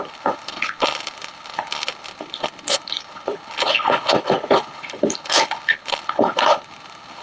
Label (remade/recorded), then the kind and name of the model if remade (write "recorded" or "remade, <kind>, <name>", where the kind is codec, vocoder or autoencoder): remade, codec, HILCodec